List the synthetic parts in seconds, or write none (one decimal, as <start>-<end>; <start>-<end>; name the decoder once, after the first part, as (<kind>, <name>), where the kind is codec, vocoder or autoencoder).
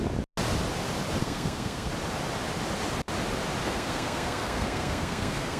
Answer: 1.2-1.9 (codec, SNAC); 3.6-5.6